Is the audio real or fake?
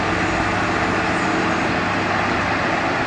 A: real